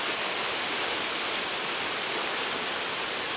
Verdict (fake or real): real